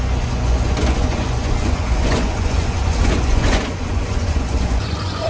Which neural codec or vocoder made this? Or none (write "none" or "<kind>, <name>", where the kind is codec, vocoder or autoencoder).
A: vocoder, Vocos